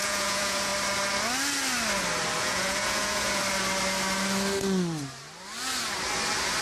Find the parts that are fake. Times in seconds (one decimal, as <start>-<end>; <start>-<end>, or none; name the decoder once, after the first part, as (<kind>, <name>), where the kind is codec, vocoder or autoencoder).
0.0-0.7 (vocoder, Vocos); 2.4-3.4